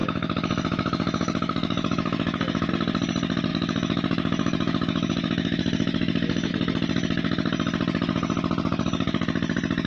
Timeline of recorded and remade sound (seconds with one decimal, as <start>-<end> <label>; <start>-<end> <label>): 0.0-2.7 remade; 2.7-3.5 recorded; 3.5-6.5 remade; 6.5-9.9 recorded